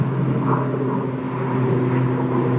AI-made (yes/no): no